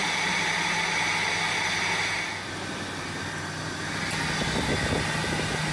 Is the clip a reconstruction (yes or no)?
no